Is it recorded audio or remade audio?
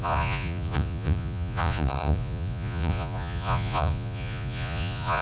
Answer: remade